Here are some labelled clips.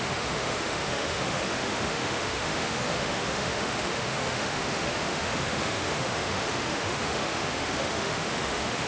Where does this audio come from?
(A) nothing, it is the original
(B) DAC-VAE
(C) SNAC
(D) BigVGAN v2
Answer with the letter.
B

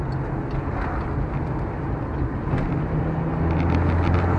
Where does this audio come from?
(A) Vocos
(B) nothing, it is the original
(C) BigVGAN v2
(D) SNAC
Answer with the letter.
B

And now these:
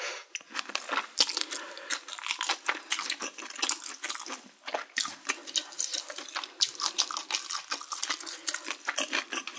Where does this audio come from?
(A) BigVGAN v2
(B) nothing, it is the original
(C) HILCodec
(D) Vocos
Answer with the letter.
B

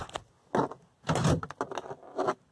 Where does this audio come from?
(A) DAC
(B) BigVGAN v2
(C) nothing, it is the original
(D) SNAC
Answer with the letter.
C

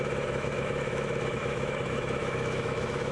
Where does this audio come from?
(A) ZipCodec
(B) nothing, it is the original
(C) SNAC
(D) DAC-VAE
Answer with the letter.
D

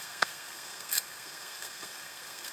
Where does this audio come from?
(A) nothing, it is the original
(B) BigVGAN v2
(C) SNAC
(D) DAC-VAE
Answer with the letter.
C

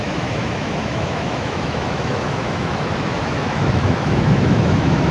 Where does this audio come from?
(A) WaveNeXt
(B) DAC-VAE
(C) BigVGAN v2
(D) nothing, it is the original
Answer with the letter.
B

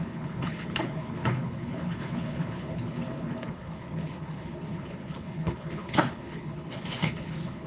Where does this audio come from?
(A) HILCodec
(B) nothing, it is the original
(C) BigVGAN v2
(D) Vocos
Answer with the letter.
A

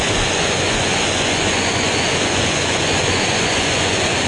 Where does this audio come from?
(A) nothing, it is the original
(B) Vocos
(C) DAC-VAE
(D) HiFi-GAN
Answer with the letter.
B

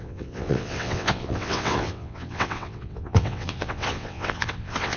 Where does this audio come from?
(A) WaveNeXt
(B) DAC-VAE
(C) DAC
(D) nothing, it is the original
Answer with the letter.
A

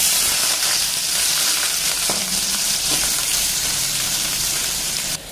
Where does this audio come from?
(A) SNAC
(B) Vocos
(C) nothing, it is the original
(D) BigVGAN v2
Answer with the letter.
D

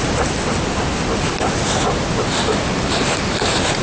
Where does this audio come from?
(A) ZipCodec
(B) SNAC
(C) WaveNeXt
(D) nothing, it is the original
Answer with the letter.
D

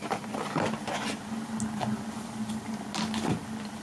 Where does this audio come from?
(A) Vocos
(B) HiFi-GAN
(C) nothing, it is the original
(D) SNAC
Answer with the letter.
C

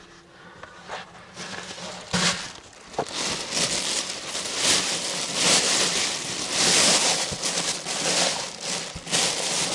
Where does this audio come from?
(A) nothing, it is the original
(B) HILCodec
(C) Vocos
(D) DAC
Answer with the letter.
A